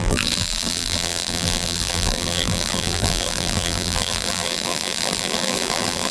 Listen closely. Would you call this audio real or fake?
fake